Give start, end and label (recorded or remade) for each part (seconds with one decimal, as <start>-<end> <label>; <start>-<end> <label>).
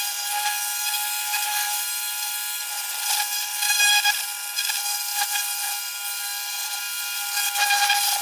0.0-8.2 recorded